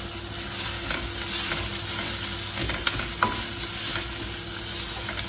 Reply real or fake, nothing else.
real